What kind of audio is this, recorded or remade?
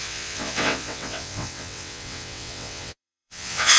remade